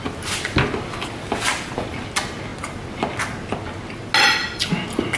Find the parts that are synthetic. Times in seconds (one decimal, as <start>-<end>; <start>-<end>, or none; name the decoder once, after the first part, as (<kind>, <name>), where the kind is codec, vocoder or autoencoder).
none